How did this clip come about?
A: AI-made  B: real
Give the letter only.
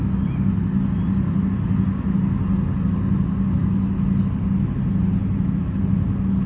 B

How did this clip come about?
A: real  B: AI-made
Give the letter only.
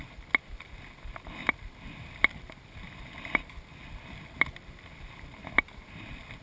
A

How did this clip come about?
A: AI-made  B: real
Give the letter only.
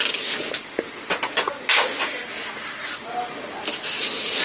B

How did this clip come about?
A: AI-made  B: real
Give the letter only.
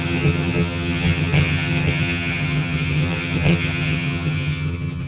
A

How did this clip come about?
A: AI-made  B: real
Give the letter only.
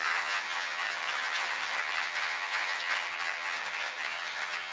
A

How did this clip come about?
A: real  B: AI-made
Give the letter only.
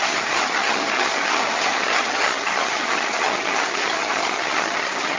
B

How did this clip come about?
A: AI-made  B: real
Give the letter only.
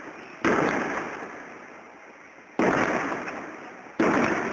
B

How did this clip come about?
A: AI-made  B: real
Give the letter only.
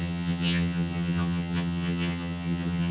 A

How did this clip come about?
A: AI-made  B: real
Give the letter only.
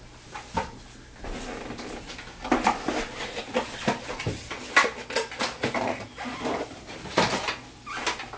B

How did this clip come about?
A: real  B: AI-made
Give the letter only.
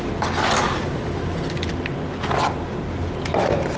A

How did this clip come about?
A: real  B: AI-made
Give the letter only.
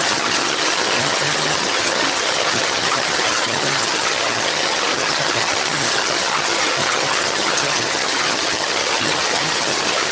B